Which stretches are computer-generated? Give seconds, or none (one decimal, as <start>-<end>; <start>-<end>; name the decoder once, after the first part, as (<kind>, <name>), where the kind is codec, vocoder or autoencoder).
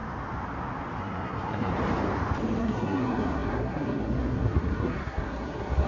1.0-1.7 (codec, SNAC); 2.6-5.9